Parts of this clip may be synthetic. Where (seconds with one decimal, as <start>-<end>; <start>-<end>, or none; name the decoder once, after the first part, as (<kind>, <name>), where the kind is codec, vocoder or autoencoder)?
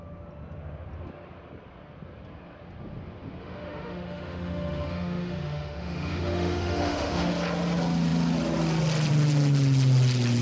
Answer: 3.4-7.3 (autoencoder, DAC-VAE)